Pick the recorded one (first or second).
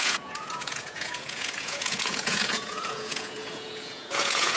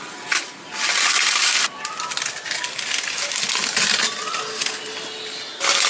second